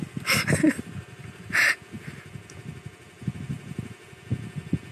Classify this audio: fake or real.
real